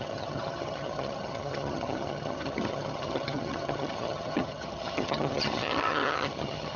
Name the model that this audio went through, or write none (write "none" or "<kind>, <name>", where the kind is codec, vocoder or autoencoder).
vocoder, HiFi-GAN